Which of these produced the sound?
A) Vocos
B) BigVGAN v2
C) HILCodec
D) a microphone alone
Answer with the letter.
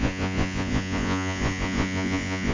A